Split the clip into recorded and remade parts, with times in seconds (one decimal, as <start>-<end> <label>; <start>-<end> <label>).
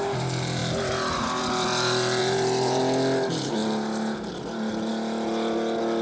0.0-2.2 recorded; 2.2-2.8 remade; 2.8-6.0 recorded